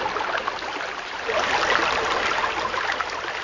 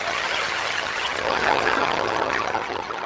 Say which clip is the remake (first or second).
second